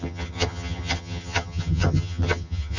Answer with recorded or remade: remade